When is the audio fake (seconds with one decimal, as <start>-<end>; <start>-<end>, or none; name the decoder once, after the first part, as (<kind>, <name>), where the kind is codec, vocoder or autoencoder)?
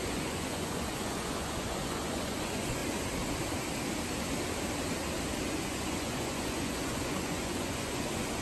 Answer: 0.0-2.8 (vocoder, Vocos); 5.4-8.4